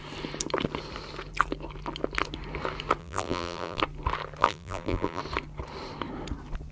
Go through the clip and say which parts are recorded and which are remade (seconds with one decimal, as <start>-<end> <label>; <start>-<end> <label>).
0.0-3.0 recorded; 3.0-3.8 remade; 3.8-4.4 recorded; 4.4-5.2 remade; 5.2-6.7 recorded